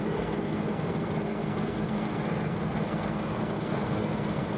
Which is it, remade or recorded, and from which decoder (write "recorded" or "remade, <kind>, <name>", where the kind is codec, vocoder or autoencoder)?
remade, codec, SNAC